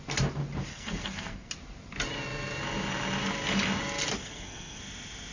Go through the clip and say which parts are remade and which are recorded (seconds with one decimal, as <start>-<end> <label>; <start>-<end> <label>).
0.0-0.7 recorded; 0.7-1.5 remade; 1.5-4.2 recorded; 4.2-4.8 remade; 4.8-5.3 recorded